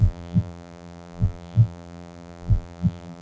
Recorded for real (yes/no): no